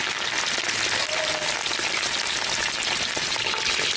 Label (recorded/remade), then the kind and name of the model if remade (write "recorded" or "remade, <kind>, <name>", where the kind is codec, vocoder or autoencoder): recorded